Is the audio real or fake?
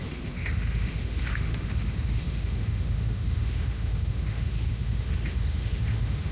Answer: fake